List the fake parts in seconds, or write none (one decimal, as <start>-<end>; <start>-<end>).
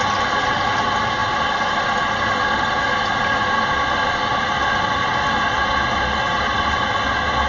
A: none